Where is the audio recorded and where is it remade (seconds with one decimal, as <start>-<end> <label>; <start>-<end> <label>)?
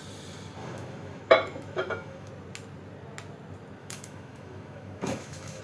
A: 0.0-0.6 recorded; 0.6-2.3 remade; 2.3-3.8 recorded; 3.8-5.6 remade